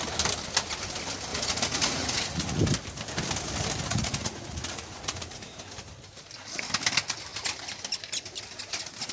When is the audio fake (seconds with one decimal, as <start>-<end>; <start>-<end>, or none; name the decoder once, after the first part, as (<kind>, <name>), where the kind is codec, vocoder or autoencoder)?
1.3-2.6 (vocoder, Vocos); 3.9-5.6